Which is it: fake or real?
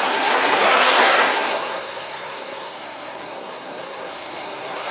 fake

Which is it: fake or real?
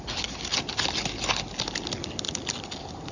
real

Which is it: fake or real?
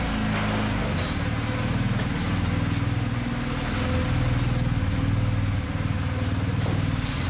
real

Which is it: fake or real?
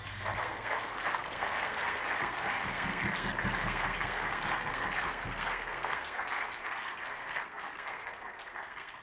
fake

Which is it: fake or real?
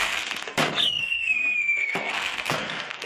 fake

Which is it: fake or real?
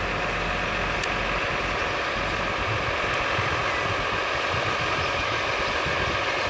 real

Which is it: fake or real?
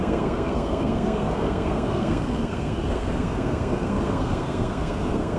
fake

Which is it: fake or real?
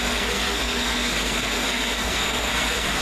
fake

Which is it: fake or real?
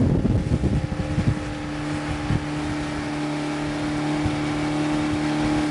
real